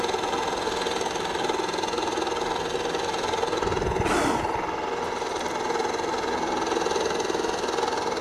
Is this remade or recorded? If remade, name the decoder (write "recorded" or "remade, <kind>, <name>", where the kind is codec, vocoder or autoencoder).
recorded